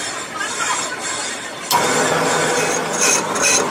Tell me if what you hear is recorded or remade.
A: recorded